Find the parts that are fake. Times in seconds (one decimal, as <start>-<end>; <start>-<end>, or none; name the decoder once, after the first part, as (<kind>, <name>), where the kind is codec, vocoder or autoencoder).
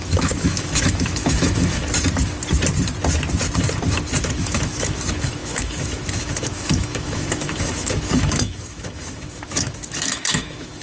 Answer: 0.0-1.8 (autoencoder, DAC-VAE); 4.2-10.8